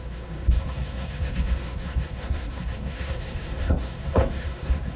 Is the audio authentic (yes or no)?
no